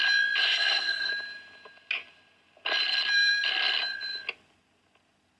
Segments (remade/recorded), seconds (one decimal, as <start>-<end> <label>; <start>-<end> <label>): 0.0-0.4 recorded; 0.4-1.1 remade; 1.1-5.4 recorded